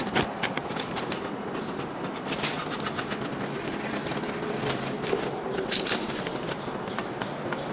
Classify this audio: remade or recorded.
remade